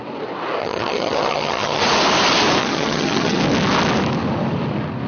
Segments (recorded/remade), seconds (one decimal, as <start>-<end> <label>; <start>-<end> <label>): 0.0-0.6 recorded; 0.6-1.8 remade; 1.8-2.6 recorded; 2.6-3.4 remade; 3.4-5.1 recorded